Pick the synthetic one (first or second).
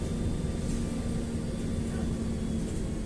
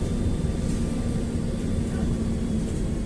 second